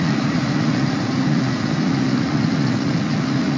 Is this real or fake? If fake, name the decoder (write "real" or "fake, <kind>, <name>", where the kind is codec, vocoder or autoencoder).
fake, vocoder, Vocos